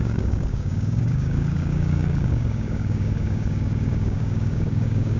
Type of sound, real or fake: fake